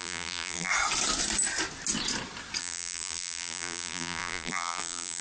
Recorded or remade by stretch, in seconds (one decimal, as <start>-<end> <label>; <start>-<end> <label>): 0.0-0.7 remade; 0.7-2.6 recorded; 2.6-5.2 remade